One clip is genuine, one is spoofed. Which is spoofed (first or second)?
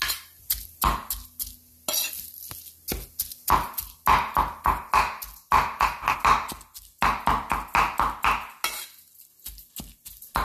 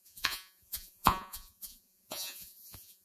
second